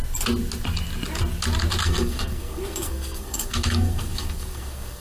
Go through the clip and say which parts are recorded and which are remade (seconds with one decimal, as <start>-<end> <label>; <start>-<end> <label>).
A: 0.0-1.8 recorded; 1.8-5.0 remade